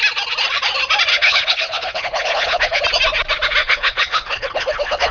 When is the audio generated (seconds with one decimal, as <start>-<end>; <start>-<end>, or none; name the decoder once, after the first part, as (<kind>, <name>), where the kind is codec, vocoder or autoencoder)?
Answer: 1.1-2.8 (codec, HILCodec); 3.6-5.1